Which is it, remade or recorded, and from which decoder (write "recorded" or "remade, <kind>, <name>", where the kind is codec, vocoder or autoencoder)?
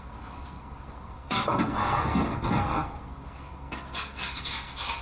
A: remade, codec, SNAC